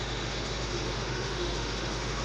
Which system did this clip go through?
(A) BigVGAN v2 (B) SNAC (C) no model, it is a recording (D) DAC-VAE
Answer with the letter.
D